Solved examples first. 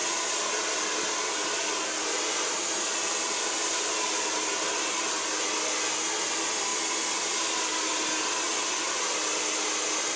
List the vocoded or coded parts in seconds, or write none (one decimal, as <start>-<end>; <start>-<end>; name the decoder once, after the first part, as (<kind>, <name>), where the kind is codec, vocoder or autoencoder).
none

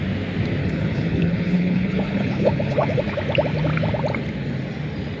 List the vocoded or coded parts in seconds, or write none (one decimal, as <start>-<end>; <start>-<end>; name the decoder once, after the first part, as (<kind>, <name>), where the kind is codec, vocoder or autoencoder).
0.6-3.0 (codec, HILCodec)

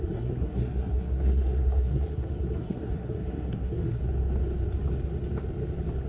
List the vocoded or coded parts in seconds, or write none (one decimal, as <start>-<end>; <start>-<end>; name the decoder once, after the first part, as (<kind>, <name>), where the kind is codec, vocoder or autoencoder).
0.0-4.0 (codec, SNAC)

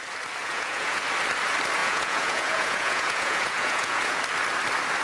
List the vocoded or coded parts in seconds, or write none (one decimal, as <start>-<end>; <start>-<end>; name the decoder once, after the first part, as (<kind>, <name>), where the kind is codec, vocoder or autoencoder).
0.4-1.0 (vocoder, Vocos); 1.8-4.2

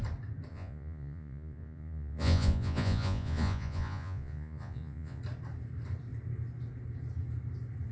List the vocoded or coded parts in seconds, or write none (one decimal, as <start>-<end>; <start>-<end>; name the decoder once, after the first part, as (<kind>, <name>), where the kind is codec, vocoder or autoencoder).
0.5-5.2 (vocoder, Vocos)

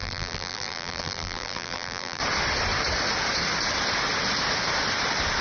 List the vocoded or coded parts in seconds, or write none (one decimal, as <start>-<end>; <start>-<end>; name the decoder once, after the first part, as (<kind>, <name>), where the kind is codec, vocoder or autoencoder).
0.0-2.2 (vocoder, BigVGAN v2)